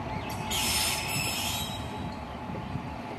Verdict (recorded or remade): recorded